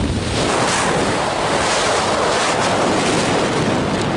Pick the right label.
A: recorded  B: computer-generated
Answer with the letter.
A